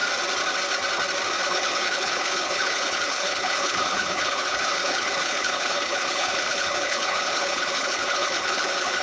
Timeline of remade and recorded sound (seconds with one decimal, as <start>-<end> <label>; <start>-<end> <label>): 0.0-1.4 recorded; 1.4-9.0 remade